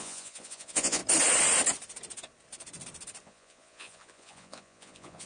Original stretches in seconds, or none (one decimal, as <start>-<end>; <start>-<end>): 1.0-3.2